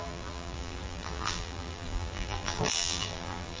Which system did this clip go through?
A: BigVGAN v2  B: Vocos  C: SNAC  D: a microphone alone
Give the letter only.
A